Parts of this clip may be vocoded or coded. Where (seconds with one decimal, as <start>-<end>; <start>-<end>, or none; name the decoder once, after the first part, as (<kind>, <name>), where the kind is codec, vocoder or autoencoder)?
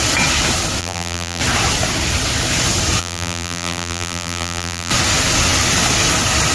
0.8-1.4 (vocoder, BigVGAN v2); 3.0-4.9